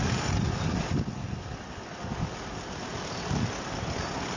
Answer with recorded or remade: recorded